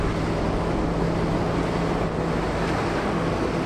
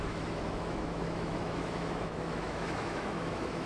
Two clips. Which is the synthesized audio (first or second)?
second